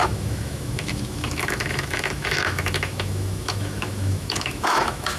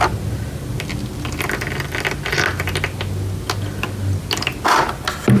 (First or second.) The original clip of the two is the second